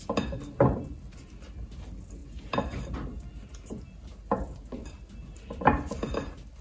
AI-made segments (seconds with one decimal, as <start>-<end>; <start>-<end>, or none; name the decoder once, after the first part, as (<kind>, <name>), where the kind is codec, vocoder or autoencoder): none